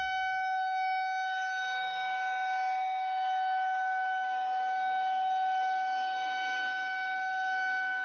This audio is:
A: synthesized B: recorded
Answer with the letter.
A